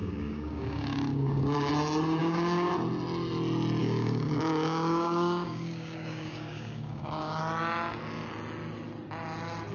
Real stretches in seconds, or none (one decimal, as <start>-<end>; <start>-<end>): 1.7-2.2; 2.7-3.8; 7.4-9.7